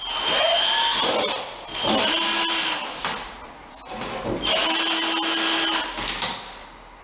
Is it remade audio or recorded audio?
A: recorded